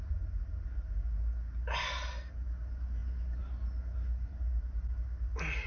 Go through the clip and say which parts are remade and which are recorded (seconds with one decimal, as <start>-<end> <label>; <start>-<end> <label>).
0.0-5.7 recorded